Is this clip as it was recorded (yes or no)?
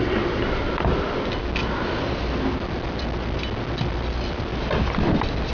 yes